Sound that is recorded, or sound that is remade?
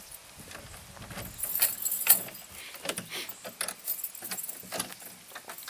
recorded